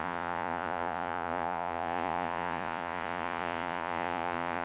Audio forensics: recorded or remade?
remade